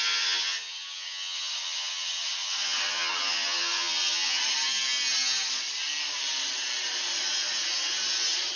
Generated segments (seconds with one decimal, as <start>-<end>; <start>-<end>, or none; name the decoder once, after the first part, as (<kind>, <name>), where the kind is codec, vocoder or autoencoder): 0.0-4.4 (vocoder, HiFi-GAN)

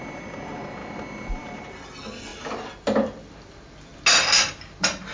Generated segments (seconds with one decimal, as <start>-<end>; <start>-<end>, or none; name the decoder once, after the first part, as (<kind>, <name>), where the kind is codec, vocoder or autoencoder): none

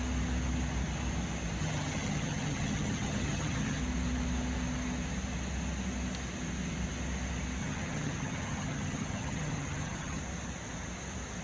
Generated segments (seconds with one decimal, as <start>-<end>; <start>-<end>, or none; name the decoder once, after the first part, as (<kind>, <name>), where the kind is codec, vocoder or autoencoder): 1.6-3.8 (vocoder, HiFi-GAN); 7.6-10.2